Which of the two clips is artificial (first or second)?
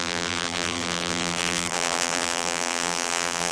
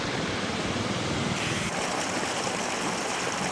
first